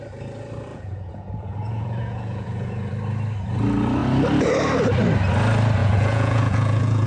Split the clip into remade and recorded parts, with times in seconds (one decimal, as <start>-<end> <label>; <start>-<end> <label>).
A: 0.0-0.7 recorded; 0.7-2.9 remade; 2.9-5.8 recorded; 5.8-7.1 remade